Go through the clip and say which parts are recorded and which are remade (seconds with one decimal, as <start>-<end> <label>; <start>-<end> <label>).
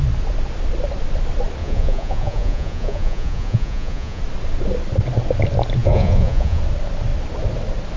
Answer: 0.0-1.6 recorded; 1.6-4.2 remade; 4.2-5.8 recorded; 5.8-6.6 remade; 6.6-8.0 recorded